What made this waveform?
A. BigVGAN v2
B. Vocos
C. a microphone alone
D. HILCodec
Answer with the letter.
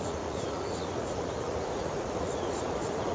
B